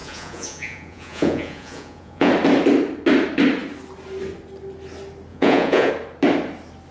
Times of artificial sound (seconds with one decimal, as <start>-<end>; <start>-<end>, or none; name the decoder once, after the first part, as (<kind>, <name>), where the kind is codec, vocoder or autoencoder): 0.0-2.3 (vocoder, Vocos); 5.3-5.9